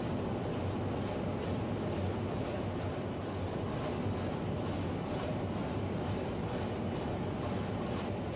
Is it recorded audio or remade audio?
recorded